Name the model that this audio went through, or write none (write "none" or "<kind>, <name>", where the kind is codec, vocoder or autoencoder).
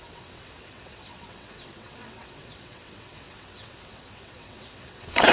vocoder, WaveNeXt